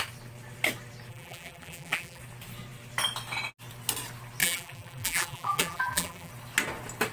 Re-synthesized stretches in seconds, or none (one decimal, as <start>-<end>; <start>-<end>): 1.1-2.2; 4.4-6.3